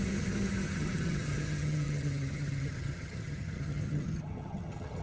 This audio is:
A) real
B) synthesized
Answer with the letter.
B